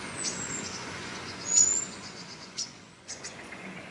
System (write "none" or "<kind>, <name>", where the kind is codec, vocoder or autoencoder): vocoder, Vocos